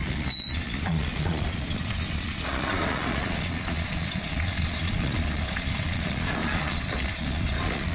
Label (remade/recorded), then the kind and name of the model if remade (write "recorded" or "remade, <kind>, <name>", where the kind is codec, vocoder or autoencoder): remade, vocoder, Vocos